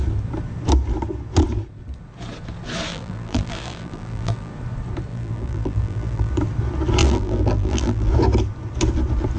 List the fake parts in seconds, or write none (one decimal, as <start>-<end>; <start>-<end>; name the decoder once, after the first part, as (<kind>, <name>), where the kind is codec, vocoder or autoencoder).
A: 2.9-4.5 (vocoder, BigVGAN v2); 5.1-6.3; 7.0-8.1